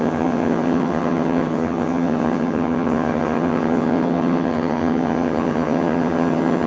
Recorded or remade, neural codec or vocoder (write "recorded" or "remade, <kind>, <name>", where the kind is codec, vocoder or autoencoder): remade, vocoder, HiFi-GAN